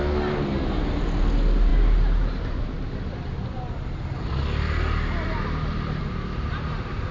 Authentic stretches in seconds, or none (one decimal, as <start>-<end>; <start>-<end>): 0.0-7.1